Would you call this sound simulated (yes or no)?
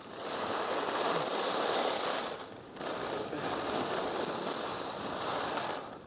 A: no